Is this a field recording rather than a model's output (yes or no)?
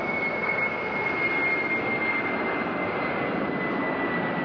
yes